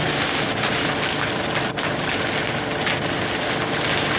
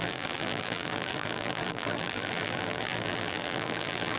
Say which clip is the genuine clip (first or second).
first